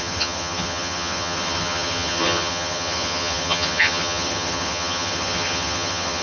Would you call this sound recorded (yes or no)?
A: no